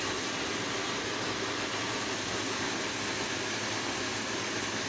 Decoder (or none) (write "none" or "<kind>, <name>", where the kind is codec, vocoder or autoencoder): none